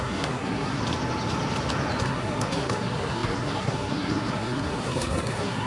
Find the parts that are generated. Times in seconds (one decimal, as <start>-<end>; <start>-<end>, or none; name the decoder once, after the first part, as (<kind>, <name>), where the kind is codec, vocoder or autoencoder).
0.0-0.8 (codec, SNAC); 2.0-5.7